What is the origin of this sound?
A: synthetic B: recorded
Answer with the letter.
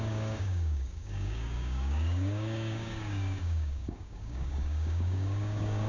A